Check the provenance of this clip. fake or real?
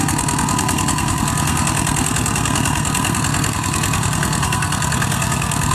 fake